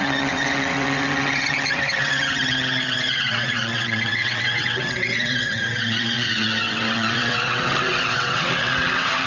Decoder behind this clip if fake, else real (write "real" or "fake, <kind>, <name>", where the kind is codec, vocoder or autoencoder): fake, vocoder, WaveNeXt